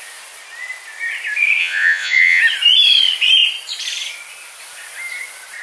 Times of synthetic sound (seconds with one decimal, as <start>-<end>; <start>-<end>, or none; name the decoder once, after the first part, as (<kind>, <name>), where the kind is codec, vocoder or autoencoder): 1.6-2.4 (vocoder, Vocos)